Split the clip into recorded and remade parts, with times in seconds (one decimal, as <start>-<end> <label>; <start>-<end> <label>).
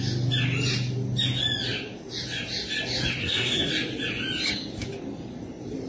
0.0-3.2 recorded; 3.2-3.7 remade; 3.7-5.9 recorded